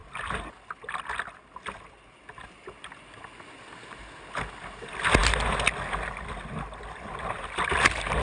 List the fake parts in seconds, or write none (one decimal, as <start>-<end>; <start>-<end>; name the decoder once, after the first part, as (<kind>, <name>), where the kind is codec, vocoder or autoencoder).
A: none

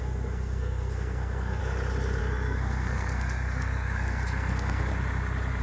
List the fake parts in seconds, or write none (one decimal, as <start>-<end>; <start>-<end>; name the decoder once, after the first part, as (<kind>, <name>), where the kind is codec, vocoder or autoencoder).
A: 0.0-1.6 (codec, SNAC); 2.2-4.9

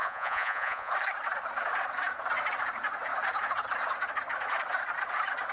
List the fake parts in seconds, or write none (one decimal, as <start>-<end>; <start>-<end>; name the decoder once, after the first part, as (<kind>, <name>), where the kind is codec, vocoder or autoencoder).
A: 0.0-0.9 (vocoder, Vocos)

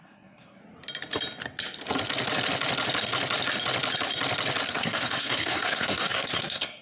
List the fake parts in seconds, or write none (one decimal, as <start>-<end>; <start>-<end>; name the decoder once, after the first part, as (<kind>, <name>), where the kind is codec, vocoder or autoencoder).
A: 0.0-0.6 (codec, SNAC); 4.7-6.8

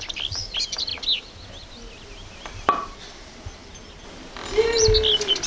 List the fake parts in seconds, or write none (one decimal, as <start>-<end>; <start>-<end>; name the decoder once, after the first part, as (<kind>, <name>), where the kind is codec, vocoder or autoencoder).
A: 0.0-0.9 (vocoder, BigVGAN v2); 2.1-3.7